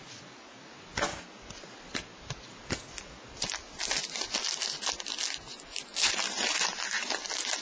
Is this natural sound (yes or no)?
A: yes